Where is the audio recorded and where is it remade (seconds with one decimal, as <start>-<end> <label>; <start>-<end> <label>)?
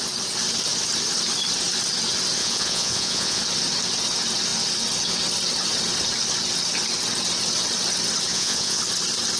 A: 0.0-2.4 recorded; 2.4-3.4 remade; 3.4-8.3 recorded; 8.3-8.8 remade; 8.8-9.4 recorded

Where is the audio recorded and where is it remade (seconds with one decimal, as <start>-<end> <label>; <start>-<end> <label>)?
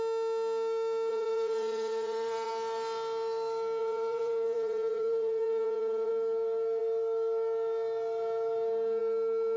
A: 0.0-1.1 recorded; 1.1-2.5 remade; 2.5-3.8 recorded; 3.8-6.1 remade; 6.1-9.6 recorded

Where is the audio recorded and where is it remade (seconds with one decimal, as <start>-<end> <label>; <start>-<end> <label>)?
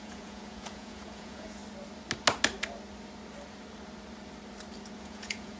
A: 0.0-1.6 remade; 1.6-5.0 recorded; 5.0-5.6 remade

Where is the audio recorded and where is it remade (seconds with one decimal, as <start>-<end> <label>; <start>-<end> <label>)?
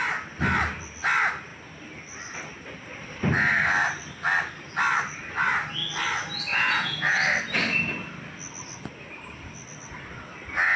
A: 0.0-6.5 recorded; 6.5-7.2 remade; 7.2-10.8 recorded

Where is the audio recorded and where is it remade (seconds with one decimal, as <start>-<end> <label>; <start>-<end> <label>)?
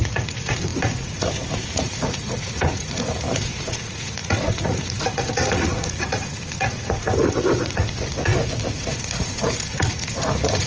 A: 0.0-8.3 remade; 8.3-8.8 recorded; 8.8-10.7 remade